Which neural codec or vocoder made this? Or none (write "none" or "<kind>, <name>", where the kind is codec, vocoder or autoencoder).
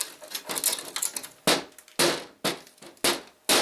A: none